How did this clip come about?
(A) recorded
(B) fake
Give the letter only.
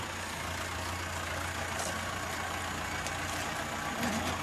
A